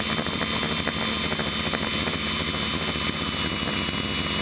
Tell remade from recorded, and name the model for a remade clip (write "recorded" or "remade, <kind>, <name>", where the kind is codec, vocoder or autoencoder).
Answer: recorded